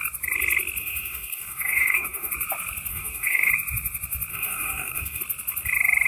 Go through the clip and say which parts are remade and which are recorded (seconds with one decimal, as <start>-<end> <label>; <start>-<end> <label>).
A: 0.0-0.8 recorded; 0.8-2.3 remade; 2.3-2.9 recorded; 2.9-3.5 remade; 3.5-4.3 recorded; 4.3-5.2 remade; 5.2-6.1 recorded